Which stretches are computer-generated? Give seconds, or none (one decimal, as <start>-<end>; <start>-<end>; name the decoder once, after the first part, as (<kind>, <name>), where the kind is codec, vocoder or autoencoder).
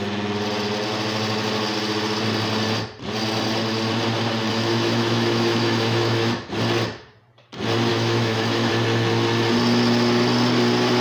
4.5-6.5 (autoencoder, DAC-VAE); 7.9-8.7